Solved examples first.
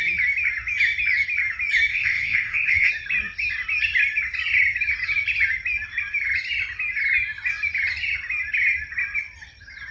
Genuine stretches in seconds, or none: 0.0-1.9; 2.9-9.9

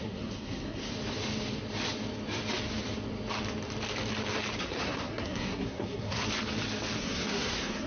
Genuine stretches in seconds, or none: 0.9-4.6; 6.2-7.0